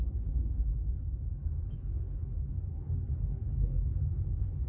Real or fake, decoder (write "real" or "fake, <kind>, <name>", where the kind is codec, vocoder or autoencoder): fake, codec, HILCodec